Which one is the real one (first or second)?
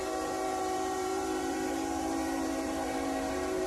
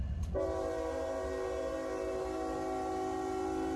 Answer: second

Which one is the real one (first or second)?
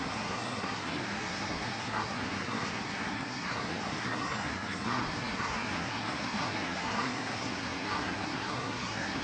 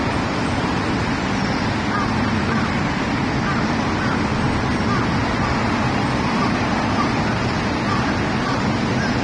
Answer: second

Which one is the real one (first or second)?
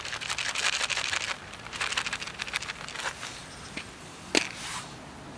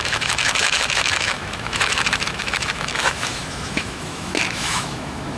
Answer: first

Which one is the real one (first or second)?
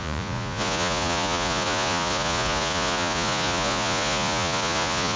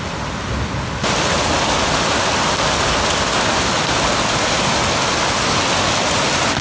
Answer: second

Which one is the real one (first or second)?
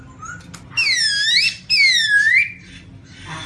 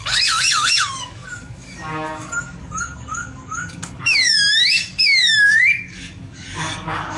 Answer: first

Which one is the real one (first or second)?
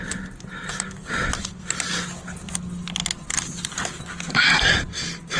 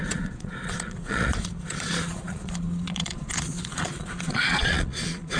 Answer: first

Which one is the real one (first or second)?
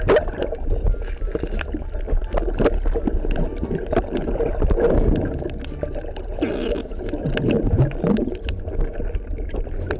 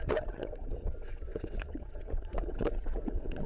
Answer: first